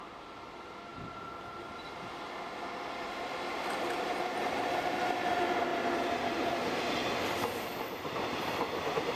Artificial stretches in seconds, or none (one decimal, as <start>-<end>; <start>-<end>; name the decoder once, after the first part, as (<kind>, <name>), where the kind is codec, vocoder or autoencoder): none